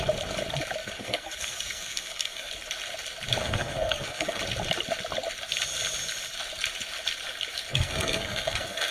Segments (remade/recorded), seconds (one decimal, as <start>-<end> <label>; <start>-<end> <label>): 0.0-0.8 recorded; 0.8-2.5 remade; 2.5-3.4 recorded; 3.4-4.4 remade; 4.4-7.7 recorded; 7.7-8.9 remade